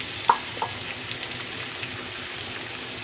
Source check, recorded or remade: recorded